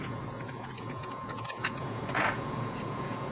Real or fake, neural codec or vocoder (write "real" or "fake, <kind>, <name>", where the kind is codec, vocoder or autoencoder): fake, vocoder, Vocos